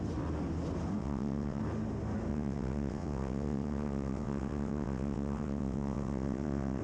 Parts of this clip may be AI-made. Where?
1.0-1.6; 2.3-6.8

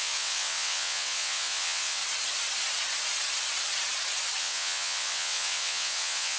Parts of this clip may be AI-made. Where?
0.0-2.0; 4.4-6.4

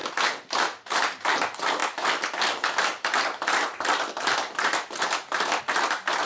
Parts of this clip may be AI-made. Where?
none

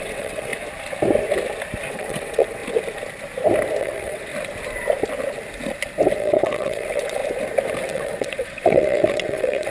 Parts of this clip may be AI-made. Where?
0.0-0.5; 1.9-2.6; 3.8-4.3; 6.2-7.2; 7.8-9.7

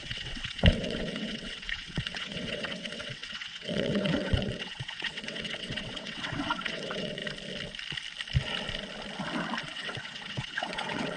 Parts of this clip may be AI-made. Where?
0.0-7.2; 9.6-11.2